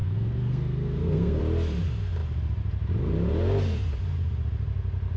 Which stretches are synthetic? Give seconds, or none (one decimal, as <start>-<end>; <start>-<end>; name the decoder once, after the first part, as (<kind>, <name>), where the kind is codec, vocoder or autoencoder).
0.0-1.4 (codec, SNAC)